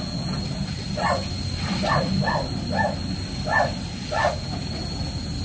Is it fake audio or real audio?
real